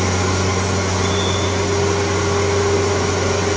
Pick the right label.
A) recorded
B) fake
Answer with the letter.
A